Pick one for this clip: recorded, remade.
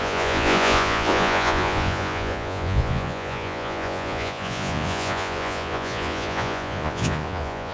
remade